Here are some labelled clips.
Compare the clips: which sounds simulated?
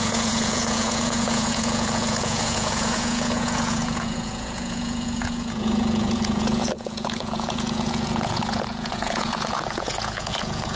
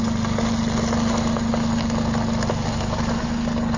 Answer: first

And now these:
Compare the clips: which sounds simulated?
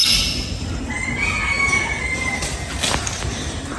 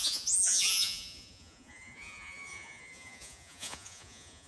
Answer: second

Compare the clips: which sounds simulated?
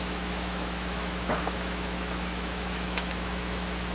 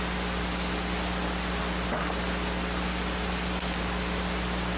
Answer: first